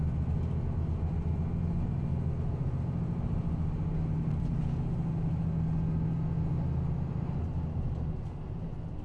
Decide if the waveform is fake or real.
real